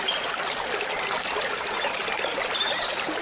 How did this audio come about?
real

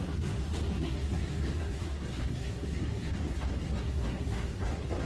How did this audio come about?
fake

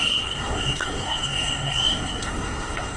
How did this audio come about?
fake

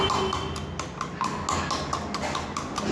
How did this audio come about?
real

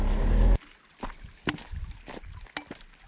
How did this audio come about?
real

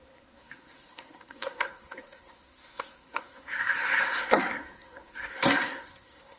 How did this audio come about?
fake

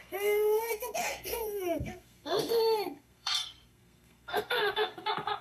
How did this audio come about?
fake